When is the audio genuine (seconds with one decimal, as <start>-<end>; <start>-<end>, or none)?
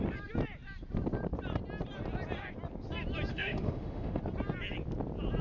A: 0.0-3.3; 4.2-5.4